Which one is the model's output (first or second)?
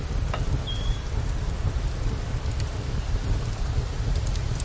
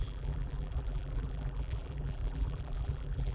second